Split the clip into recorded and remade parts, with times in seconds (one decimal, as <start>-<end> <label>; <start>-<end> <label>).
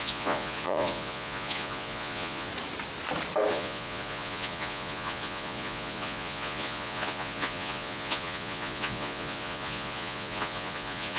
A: 0.0-2.5 remade; 2.5-3.5 recorded; 3.5-11.2 remade